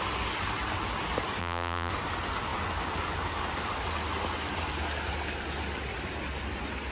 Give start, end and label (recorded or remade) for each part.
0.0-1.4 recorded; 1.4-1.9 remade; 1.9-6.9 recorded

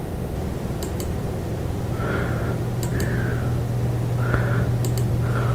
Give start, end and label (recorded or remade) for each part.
0.0-5.5 recorded

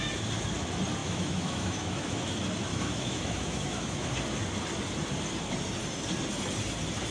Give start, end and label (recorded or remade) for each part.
0.0-1.0 recorded; 1.0-2.2 remade; 2.2-2.7 recorded; 2.7-4.1 remade; 4.1-7.1 recorded

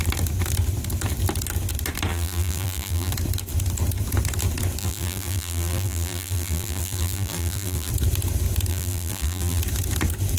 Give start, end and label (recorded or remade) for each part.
0.0-2.1 recorded; 2.1-3.1 remade; 3.1-4.8 recorded; 4.8-7.9 remade; 7.9-8.7 recorded; 8.7-9.6 remade; 9.6-10.4 recorded

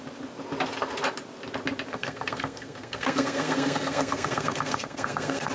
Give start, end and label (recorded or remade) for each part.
0.0-1.9 recorded; 1.9-5.5 remade

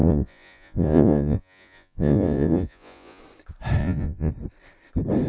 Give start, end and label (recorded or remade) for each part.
0.0-3.2 remade; 3.2-3.8 recorded; 3.8-4.3 remade; 4.3-5.3 recorded

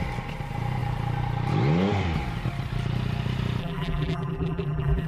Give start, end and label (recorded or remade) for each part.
0.0-3.6 recorded; 3.6-5.1 remade

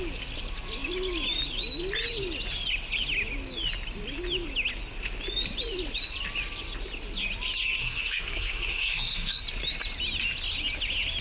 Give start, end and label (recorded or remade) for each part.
0.0-7.8 recorded; 7.8-9.4 remade; 9.4-11.2 recorded